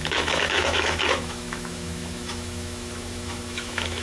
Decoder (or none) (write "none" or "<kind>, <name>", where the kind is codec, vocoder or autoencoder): autoencoder, DAC-VAE